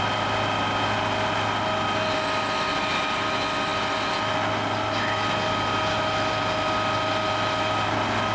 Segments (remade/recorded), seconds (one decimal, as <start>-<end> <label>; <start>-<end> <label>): 0.0-8.3 recorded

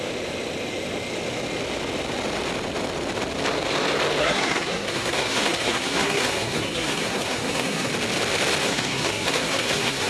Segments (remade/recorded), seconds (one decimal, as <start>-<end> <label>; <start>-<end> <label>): 0.0-4.2 recorded; 4.2-7.9 remade; 7.9-8.6 recorded; 8.6-10.1 remade

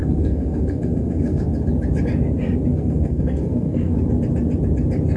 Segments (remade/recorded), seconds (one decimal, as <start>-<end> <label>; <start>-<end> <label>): 0.0-1.4 remade; 1.4-2.7 recorded; 2.7-4.0 remade; 4.0-5.2 recorded

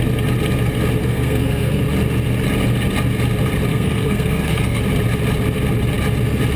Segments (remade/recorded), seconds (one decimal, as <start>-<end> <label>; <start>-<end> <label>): 0.0-1.0 recorded; 1.0-1.8 remade; 1.8-3.7 recorded; 3.7-4.8 remade; 4.8-6.6 recorded

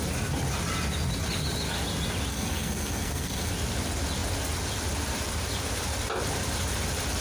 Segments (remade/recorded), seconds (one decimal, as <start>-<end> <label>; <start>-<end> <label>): 0.0-2.3 recorded; 2.3-3.5 remade; 3.5-7.2 recorded

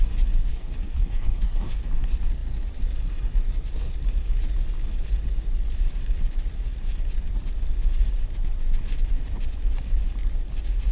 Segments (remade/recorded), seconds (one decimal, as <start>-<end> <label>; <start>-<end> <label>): 0.0-0.5 recorded; 0.5-1.8 remade; 1.8-10.9 recorded